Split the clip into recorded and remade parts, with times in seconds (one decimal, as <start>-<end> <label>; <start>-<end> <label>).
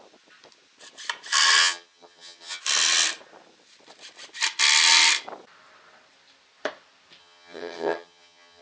0.0-1.6 recorded; 1.6-2.6 remade; 2.6-7.2 recorded; 7.2-8.6 remade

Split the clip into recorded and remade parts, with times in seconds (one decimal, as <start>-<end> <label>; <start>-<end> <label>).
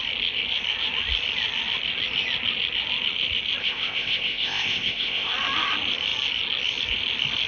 0.0-3.6 recorded; 3.6-5.3 remade; 5.3-7.5 recorded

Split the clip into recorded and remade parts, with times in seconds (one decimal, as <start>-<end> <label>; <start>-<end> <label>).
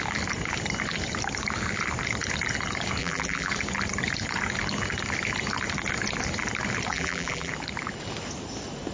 0.0-3.0 recorded; 3.0-3.5 remade; 3.5-6.9 recorded; 6.9-7.5 remade; 7.5-8.9 recorded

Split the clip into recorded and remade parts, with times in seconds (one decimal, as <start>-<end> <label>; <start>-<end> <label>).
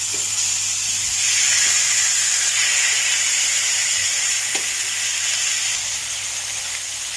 0.0-7.2 recorded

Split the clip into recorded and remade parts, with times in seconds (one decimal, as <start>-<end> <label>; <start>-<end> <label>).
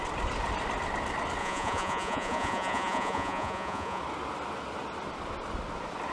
0.0-1.4 recorded; 1.4-4.0 remade; 4.0-6.1 recorded